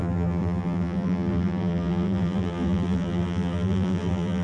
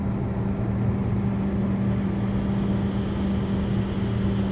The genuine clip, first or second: second